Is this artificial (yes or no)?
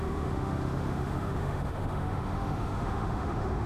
yes